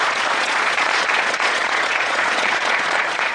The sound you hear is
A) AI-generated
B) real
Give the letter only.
A